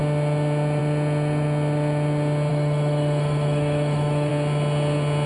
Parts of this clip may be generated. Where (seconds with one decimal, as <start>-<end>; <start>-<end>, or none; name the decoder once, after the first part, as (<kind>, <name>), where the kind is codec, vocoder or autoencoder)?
2.5-4.3 (autoencoder, DAC-VAE)